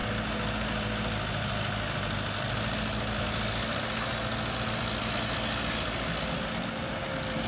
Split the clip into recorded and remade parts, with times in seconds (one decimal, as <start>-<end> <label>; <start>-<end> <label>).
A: 0.0-7.5 recorded